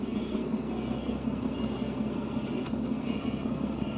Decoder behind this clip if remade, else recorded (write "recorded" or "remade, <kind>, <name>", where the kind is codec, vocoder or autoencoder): remade, codec, SNAC